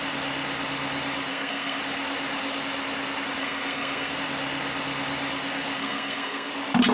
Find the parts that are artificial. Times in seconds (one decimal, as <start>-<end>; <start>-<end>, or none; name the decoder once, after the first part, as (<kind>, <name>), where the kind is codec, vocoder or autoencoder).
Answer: 1.3-1.8 (codec, SNAC); 3.4-4.1; 5.8-6.5